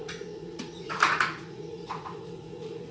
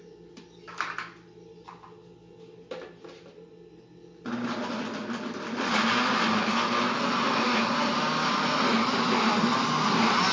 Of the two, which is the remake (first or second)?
first